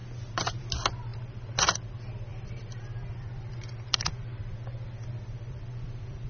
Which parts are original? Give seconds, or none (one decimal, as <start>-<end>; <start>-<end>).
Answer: 0.6-1.1; 1.9-2.3